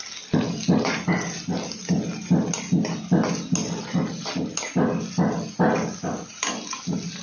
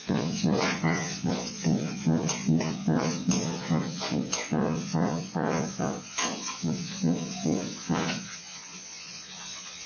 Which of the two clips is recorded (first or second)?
first